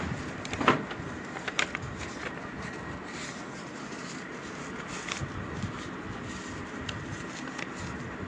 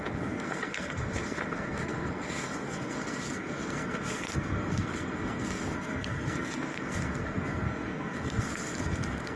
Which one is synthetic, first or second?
second